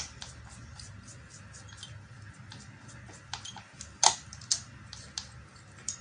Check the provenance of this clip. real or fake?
real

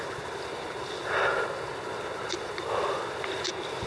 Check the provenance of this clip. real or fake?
real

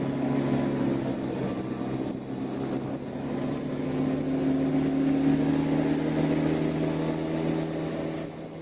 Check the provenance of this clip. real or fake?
real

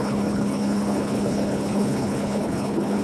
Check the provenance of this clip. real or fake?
fake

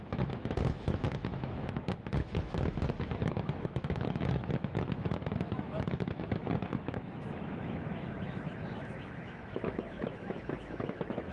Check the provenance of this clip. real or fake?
fake